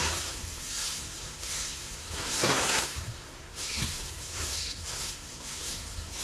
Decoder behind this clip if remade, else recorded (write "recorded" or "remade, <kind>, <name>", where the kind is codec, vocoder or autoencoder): remade, codec, SNAC